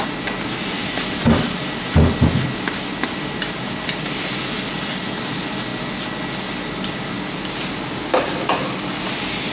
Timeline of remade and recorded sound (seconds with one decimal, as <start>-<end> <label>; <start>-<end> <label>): 0.0-9.5 recorded